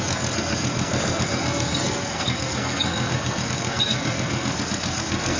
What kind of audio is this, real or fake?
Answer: fake